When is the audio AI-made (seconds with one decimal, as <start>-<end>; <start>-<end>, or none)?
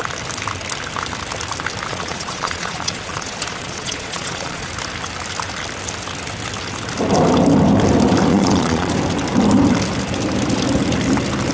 1.9-4.7; 8.3-8.9